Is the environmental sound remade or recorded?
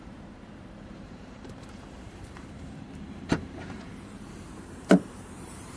remade